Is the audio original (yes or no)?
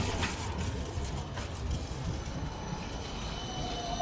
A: yes